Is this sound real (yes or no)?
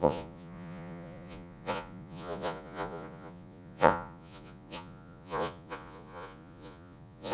no